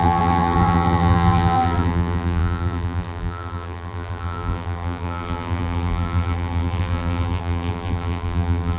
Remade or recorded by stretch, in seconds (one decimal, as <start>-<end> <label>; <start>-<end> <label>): 0.0-8.8 remade